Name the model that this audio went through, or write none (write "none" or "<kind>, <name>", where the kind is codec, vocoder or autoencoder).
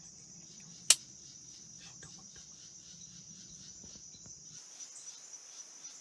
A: none